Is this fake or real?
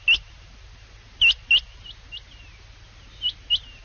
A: real